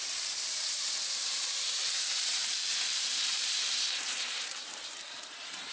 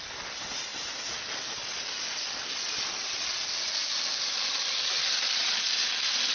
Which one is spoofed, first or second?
first